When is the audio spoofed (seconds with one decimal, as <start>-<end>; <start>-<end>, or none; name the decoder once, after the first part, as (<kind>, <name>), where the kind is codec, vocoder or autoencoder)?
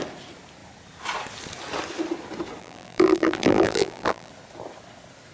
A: 2.6-4.3 (vocoder, BigVGAN v2)